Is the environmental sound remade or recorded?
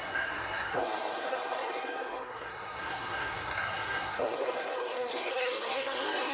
remade